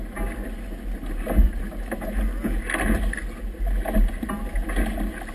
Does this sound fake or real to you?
real